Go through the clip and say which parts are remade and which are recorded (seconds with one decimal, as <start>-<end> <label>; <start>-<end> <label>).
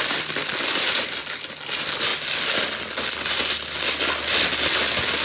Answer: 0.0-5.2 recorded